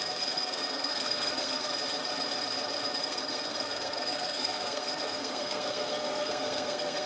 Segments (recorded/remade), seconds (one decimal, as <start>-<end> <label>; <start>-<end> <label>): 0.0-1.7 remade; 1.7-3.0 recorded; 3.0-7.1 remade